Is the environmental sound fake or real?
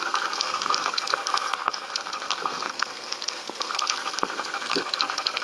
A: fake